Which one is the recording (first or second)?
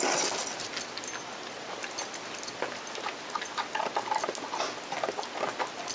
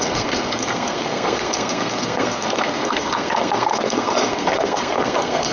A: first